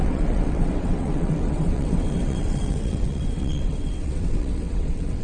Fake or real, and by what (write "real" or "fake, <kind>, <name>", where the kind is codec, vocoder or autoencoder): fake, vocoder, WaveNeXt